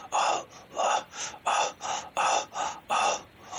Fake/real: real